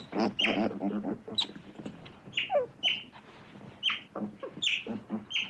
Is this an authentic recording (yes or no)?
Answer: yes